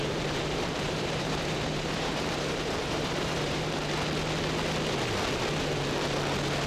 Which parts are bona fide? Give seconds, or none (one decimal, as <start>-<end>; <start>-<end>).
3.9-6.7